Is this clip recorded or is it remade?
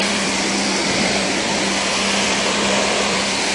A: remade